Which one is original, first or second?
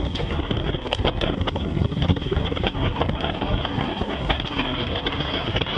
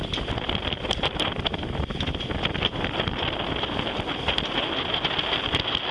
second